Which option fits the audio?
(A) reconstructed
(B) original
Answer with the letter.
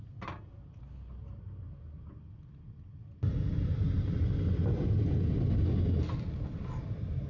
B